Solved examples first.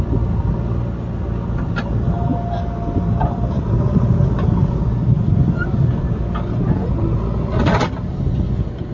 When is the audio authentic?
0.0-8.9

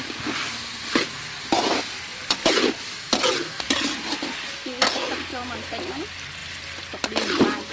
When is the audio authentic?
0.0-0.4; 1.7-2.1; 2.7-5.3; 6.0-6.4

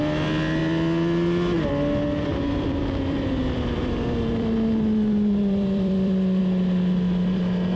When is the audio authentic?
0.0-0.6; 1.7-2.3; 6.4-7.8

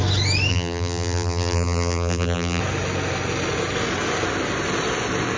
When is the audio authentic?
0.0-0.5; 2.6-5.4

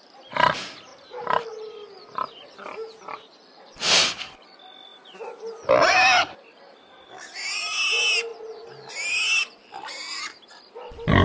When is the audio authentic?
0.0-11.2

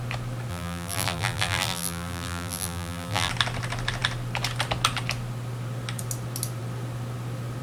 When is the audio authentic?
0.0-0.5; 3.3-7.6